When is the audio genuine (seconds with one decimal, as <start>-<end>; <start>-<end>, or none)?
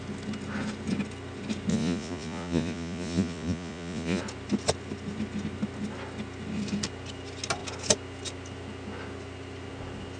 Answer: 0.0-1.7; 4.2-10.2